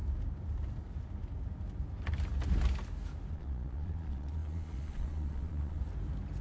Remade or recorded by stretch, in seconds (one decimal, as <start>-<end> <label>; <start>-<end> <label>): 0.0-3.3 recorded; 3.3-5.8 remade; 5.8-6.4 recorded